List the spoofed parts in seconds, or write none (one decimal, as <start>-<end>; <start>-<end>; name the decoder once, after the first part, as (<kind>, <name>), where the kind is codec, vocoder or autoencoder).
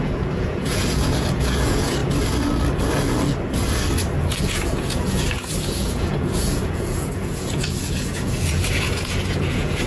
0.0-2.0 (vocoder, Vocos); 4.4-9.9